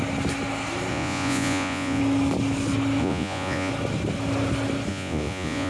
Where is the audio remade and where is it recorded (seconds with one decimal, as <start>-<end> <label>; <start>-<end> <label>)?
0.0-0.9 recorded; 0.9-2.0 remade; 2.0-3.0 recorded; 3.0-3.7 remade; 3.7-4.9 recorded; 4.9-5.7 remade